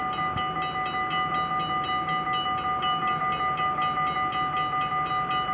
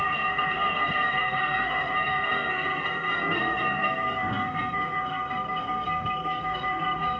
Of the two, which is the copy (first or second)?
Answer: second